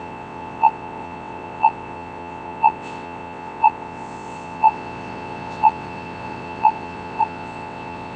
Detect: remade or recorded remade